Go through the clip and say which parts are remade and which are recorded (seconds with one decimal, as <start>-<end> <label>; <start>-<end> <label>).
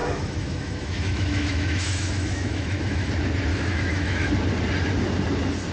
0.0-3.1 remade; 3.1-3.5 recorded; 3.5-4.3 remade; 4.3-5.7 recorded